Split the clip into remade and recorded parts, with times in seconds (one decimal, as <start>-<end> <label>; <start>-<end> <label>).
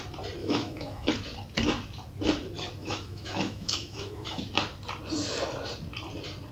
0.0-0.4 recorded; 0.4-1.1 remade; 1.1-2.8 recorded; 2.8-4.4 remade; 4.4-6.5 recorded